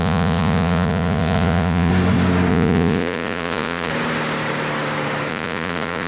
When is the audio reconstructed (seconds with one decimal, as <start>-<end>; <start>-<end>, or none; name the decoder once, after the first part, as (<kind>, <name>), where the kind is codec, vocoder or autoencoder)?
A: 0.0-1.9 (vocoder, Vocos); 2.5-3.9; 5.3-6.1